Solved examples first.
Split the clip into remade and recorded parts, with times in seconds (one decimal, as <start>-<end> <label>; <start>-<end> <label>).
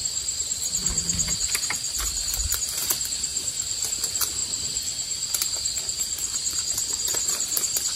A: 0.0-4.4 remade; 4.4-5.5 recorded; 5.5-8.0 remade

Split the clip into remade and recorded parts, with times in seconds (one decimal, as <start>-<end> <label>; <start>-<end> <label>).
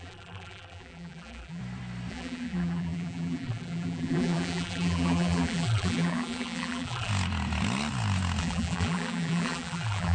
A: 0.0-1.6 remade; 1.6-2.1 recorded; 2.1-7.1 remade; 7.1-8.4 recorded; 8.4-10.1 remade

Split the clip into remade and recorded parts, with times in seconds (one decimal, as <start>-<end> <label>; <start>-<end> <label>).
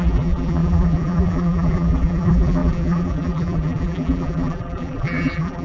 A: 0.0-5.6 remade